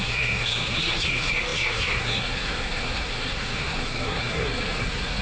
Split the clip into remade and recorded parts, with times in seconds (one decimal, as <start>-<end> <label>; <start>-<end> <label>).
0.0-5.2 remade